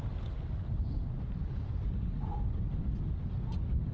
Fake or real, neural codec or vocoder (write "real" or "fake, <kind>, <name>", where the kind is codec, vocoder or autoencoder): real